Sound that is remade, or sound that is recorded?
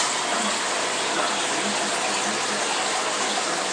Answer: recorded